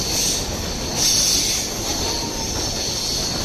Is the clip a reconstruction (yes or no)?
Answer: no